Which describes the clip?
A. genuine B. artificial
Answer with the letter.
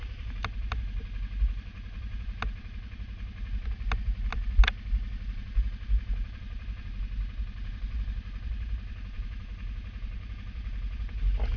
A